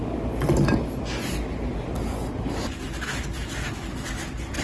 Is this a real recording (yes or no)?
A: yes